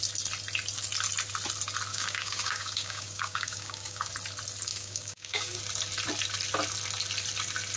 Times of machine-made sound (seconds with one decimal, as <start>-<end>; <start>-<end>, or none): 1.9-4.1; 4.7-5.6